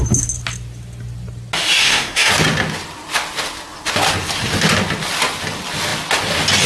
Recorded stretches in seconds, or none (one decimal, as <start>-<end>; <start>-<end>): 0.0-1.8; 2.3-6.7